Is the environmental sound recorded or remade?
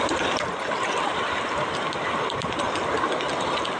recorded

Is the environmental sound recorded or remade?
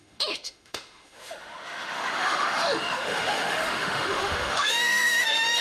remade